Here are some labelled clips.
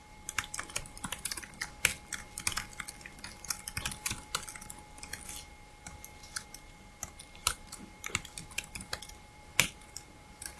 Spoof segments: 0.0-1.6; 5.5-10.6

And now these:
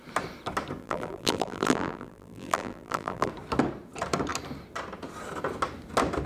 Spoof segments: 0.8-3.3